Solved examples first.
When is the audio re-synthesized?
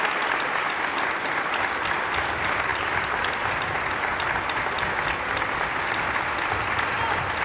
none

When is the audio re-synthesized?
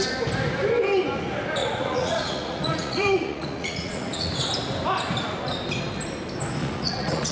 1.6-4.3; 6.6-7.3